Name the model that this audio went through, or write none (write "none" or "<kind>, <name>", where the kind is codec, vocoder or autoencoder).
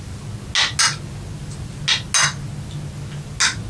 none